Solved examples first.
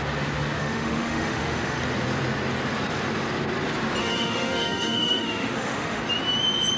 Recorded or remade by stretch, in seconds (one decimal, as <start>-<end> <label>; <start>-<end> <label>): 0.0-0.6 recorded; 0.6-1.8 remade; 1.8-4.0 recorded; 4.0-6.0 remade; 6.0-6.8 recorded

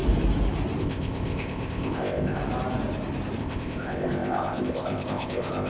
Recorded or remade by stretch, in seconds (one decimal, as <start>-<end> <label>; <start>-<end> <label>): 0.0-0.8 recorded; 0.8-2.4 remade; 2.4-3.4 recorded; 3.4-5.7 remade

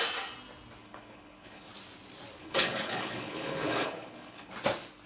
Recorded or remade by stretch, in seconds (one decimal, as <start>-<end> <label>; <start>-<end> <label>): 0.0-0.8 recorded; 0.8-1.7 remade; 1.7-2.4 recorded; 2.4-4.5 remade; 4.5-5.1 recorded

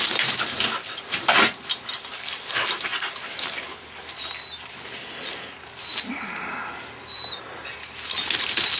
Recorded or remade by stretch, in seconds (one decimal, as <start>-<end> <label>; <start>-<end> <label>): 0.0-8.8 recorded

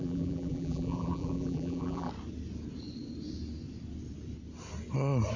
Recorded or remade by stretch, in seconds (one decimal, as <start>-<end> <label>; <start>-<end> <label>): 0.0-2.1 remade; 2.1-5.4 recorded

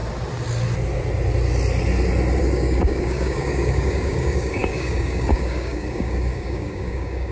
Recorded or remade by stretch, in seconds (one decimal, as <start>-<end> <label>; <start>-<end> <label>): 0.0-2.4 recorded; 2.4-7.3 remade

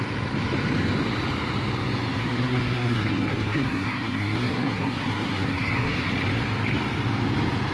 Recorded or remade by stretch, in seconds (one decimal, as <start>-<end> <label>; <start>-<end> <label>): 0.0-2.2 recorded; 2.2-6.1 remade; 6.1-7.7 recorded